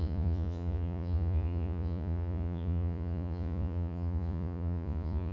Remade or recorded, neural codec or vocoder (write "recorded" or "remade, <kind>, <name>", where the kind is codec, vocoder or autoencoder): remade, vocoder, Vocos